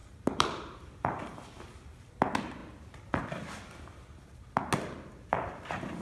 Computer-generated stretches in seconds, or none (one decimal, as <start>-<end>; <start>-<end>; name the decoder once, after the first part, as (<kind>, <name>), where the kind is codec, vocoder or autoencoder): 0.0-2.1 (vocoder, BigVGAN v2)